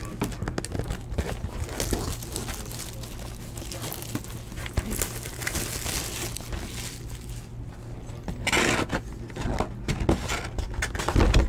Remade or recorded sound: recorded